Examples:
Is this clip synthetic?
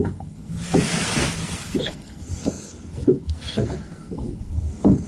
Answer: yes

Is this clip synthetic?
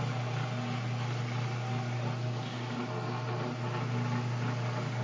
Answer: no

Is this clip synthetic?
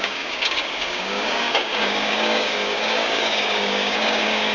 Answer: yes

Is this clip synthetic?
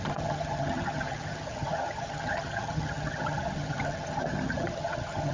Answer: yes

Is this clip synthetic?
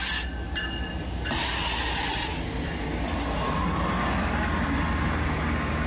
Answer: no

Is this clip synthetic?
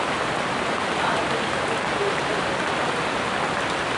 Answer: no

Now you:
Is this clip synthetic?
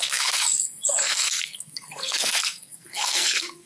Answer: yes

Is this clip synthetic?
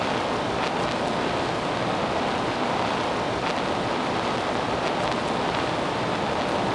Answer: no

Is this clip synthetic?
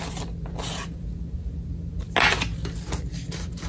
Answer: no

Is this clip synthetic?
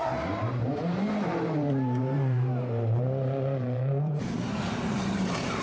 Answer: yes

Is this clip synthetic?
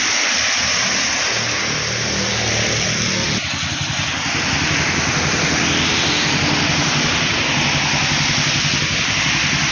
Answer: no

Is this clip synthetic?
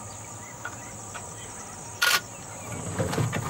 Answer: no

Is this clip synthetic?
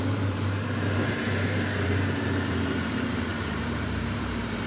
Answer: yes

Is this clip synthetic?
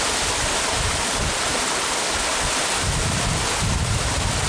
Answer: no